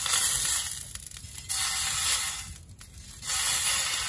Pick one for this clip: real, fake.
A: real